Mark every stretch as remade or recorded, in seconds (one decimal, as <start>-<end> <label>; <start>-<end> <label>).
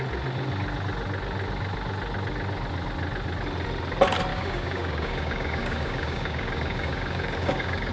0.0-4.3 recorded; 4.3-7.9 remade